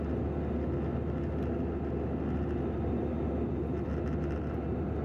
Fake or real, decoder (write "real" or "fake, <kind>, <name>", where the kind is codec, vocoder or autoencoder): real